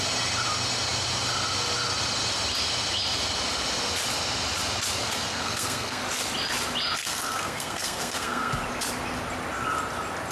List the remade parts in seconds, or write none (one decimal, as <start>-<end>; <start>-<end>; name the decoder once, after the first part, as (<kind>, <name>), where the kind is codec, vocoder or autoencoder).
5.0-6.0 (codec, SNAC); 7.0-8.5